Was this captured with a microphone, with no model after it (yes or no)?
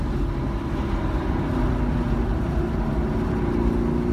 yes